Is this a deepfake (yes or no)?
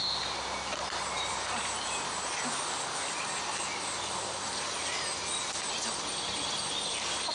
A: no